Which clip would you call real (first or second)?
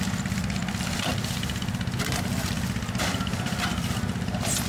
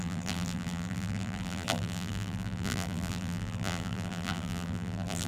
first